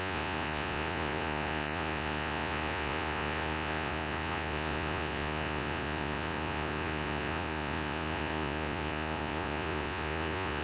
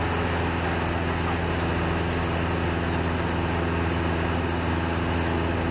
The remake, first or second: first